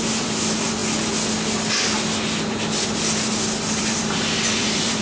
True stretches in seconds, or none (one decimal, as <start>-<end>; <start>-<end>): 0.8-3.8